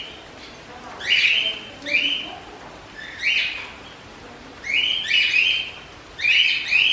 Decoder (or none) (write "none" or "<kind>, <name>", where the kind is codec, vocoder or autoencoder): none